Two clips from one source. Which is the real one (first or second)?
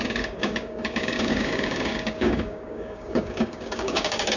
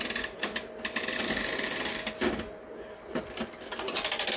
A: second